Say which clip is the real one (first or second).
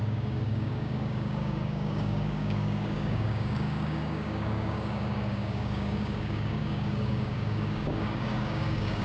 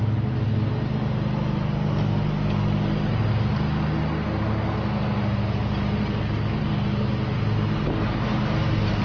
second